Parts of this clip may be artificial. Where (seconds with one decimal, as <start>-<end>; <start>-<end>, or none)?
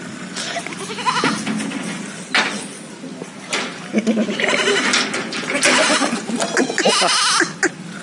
none